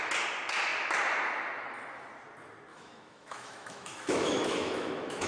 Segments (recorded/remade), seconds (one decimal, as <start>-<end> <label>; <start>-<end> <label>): 0.0-2.7 recorded; 2.7-5.3 remade